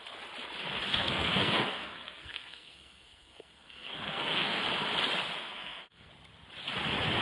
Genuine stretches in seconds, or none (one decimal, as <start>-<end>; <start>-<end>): 0.0-0.9; 4.6-5.4; 6.1-7.2